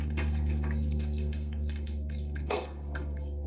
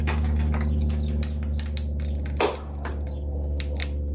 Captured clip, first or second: second